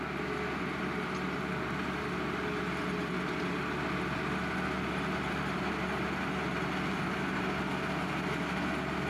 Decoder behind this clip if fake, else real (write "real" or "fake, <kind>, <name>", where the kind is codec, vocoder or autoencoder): real